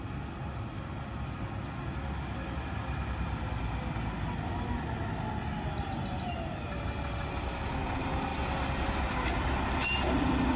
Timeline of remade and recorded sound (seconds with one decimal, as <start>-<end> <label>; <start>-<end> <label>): 0.0-10.6 recorded